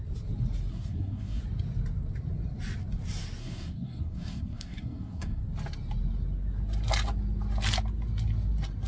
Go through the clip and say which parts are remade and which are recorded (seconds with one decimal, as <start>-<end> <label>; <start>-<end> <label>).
0.0-0.7 recorded; 0.7-1.4 remade; 1.4-3.4 recorded; 3.4-5.4 remade; 5.4-8.9 recorded